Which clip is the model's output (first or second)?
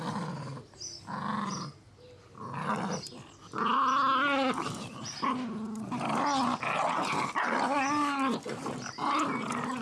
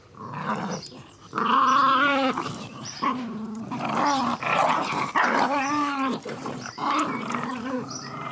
second